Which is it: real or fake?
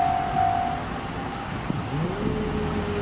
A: real